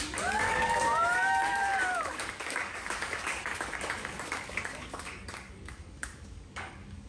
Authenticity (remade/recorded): remade